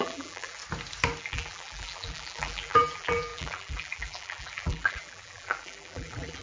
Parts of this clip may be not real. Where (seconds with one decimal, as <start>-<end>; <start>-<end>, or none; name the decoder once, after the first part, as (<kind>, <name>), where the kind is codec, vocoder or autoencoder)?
0.0-0.6 (vocoder, BigVGAN v2); 1.2-6.4